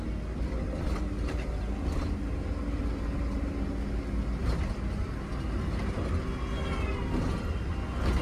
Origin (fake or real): real